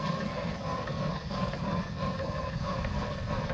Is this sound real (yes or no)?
no